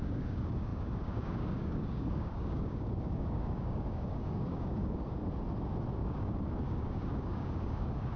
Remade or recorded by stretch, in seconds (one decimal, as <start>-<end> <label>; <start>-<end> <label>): 0.0-5.2 remade; 5.2-5.9 recorded; 5.9-8.2 remade